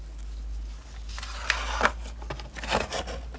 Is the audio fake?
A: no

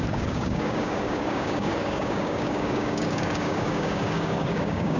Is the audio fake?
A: yes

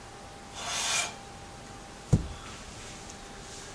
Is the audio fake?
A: no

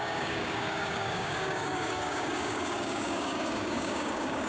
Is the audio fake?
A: yes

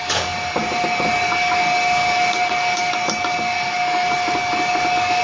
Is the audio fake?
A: yes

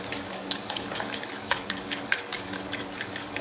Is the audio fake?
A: yes